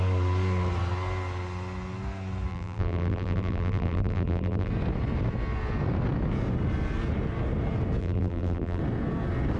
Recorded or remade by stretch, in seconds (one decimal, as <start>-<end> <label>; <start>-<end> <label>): 0.0-2.5 recorded; 2.5-4.7 remade; 4.7-8.0 recorded; 8.0-8.8 remade; 8.8-9.6 recorded